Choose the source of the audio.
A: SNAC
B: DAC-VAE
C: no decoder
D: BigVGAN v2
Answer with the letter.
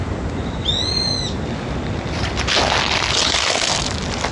C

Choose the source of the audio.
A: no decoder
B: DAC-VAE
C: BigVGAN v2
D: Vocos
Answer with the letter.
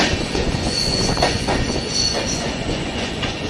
D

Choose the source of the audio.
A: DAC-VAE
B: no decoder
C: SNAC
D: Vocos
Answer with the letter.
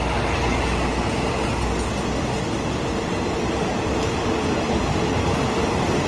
B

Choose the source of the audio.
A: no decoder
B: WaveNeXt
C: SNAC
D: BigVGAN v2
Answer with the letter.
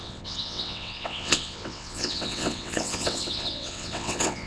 B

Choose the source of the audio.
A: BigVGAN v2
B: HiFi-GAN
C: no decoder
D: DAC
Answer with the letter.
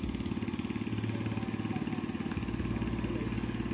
C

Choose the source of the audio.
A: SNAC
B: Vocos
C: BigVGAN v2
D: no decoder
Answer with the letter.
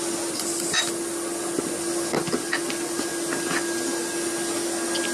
D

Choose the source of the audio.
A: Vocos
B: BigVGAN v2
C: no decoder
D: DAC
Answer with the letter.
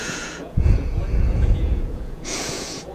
A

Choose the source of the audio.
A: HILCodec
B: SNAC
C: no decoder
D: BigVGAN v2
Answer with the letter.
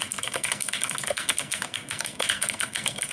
B